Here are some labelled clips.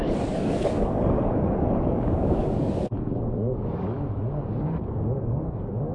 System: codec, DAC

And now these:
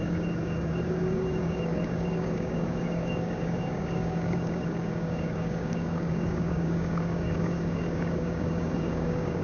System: codec, DAC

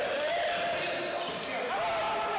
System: none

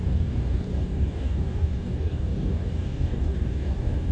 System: codec, DAC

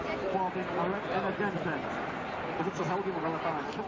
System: none